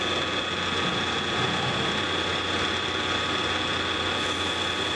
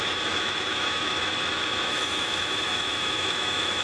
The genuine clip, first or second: first